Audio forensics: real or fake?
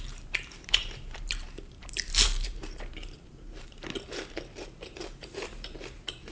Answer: fake